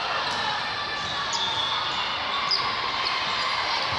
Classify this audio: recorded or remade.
recorded